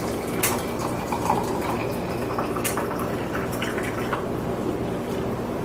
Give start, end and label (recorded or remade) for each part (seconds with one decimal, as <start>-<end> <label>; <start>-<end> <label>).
0.0-1.8 remade; 1.8-3.0 recorded; 3.0-4.1 remade; 4.1-4.7 recorded; 4.7-5.6 remade